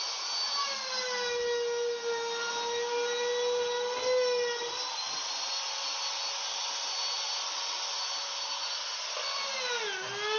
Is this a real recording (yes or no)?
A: yes